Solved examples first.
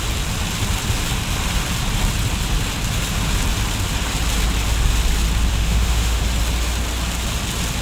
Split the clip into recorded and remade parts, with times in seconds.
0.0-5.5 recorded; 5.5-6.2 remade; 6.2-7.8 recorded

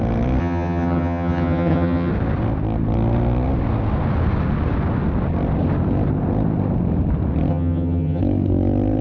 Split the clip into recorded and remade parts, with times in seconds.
0.0-0.4 recorded; 0.4-2.1 remade; 2.1-7.5 recorded; 7.5-8.2 remade; 8.2-9.0 recorded

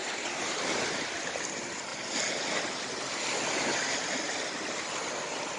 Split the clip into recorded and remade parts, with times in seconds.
0.0-5.6 recorded

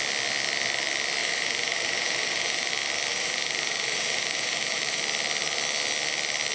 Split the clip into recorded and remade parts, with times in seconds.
0.0-1.2 recorded; 1.2-2.7 remade; 2.7-3.1 recorded; 3.1-5.0 remade; 5.0-6.5 recorded

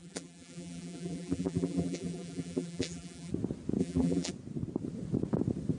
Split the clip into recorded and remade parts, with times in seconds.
0.0-3.3 remade; 3.3-3.8 recorded; 3.8-4.3 remade; 4.3-5.8 recorded

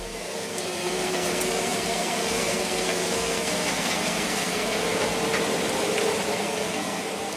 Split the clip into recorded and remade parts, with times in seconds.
0.0-5.1 remade; 5.1-6.3 recorded; 6.3-7.4 remade

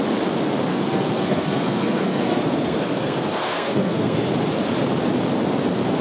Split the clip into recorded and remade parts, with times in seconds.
0.0-0.7 recorded; 0.7-4.3 remade; 4.3-6.0 recorded

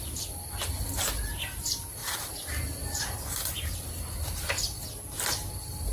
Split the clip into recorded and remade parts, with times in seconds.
0.0-2.0 recorded; 2.0-3.8 remade; 3.8-5.9 recorded